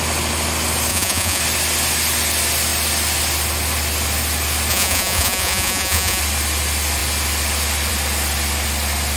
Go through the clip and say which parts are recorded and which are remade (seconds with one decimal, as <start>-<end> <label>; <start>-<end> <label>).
0.0-0.9 recorded; 0.9-1.4 remade; 1.4-4.7 recorded; 4.7-6.2 remade; 6.2-9.2 recorded